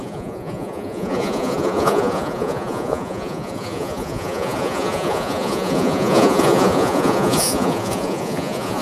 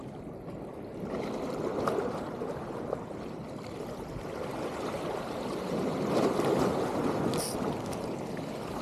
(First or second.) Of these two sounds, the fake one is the first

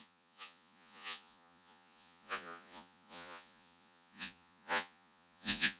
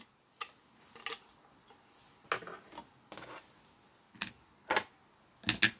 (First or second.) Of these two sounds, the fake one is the first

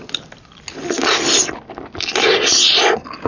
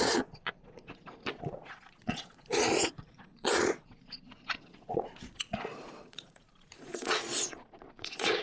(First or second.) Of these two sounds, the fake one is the second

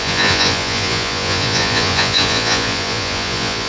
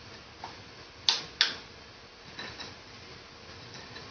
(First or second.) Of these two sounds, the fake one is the first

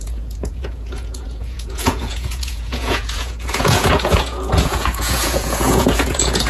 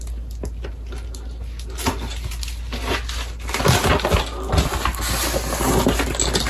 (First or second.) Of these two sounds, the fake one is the first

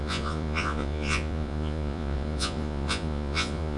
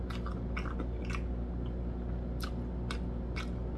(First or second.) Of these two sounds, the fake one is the first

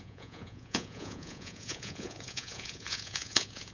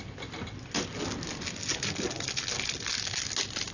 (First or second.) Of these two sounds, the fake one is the first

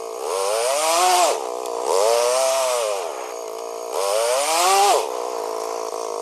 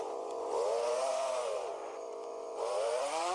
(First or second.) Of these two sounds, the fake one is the second